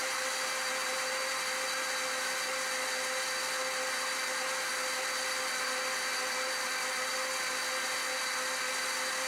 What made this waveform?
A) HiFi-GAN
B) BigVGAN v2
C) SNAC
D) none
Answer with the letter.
D